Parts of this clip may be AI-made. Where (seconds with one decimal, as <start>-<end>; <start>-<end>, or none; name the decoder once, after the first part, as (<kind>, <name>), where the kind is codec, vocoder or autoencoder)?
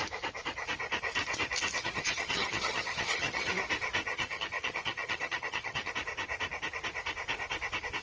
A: 1.8-3.5 (vocoder, HiFi-GAN); 4.1-5.9